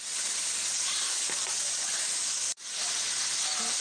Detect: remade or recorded recorded